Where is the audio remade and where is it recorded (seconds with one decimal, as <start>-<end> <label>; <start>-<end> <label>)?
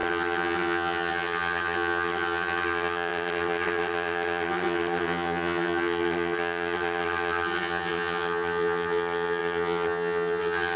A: 0.0-10.8 remade